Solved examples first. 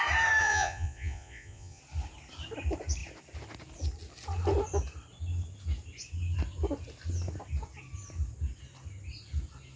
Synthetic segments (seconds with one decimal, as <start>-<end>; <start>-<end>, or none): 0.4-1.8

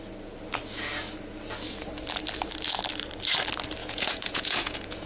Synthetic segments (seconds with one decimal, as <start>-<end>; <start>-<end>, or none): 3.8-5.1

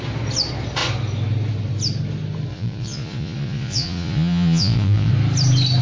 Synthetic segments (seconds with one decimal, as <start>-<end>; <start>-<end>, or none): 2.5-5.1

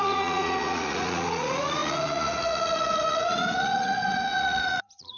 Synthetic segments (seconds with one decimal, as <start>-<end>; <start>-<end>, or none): 0.0-5.2

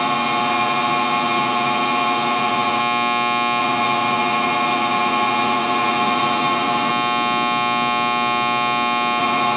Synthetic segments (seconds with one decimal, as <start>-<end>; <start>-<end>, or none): 0.0-2.8; 3.6-6.9; 9.2-9.6

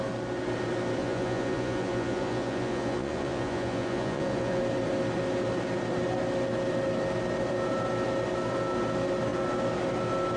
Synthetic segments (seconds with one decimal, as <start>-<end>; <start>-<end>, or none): 1.0-4.6